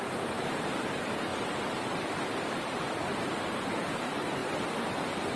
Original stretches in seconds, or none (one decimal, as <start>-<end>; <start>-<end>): 1.3-1.9; 4.4-5.4